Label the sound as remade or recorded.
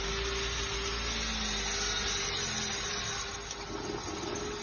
recorded